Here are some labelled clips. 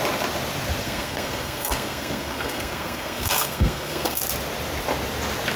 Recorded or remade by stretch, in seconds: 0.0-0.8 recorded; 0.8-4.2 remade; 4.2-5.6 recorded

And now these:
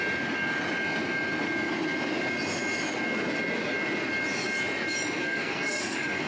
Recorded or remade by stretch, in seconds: 0.0-5.2 recorded; 5.2-6.3 remade